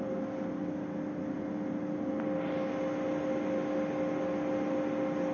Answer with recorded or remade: recorded